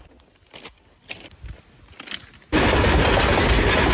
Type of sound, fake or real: real